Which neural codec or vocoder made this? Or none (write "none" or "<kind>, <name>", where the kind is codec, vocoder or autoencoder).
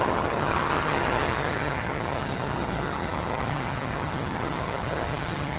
vocoder, HiFi-GAN